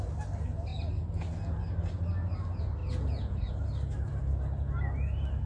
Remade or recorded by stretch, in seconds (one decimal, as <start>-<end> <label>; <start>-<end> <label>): 0.0-2.8 recorded; 2.8-3.5 remade; 3.5-5.5 recorded